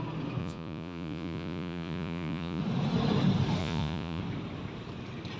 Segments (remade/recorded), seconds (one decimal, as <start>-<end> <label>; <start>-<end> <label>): 0.0-0.4 recorded; 0.4-2.6 remade; 2.6-3.6 recorded; 3.6-4.2 remade; 4.2-5.4 recorded